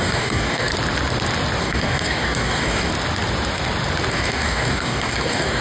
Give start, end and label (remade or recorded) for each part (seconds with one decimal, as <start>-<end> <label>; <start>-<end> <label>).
0.0-0.7 remade; 0.7-1.6 recorded; 1.6-2.9 remade; 2.9-4.1 recorded; 4.1-5.6 remade